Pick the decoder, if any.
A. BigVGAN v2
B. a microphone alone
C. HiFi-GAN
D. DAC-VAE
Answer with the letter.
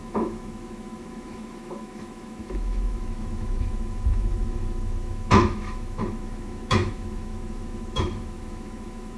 D